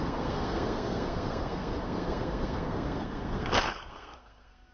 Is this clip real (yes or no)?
no